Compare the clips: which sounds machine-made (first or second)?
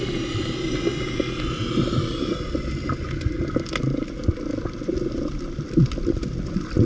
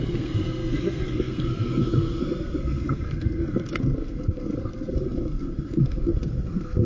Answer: second